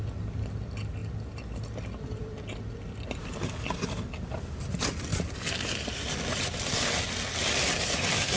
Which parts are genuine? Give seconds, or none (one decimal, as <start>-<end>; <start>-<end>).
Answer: 0.0-8.4